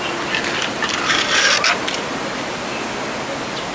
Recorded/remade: recorded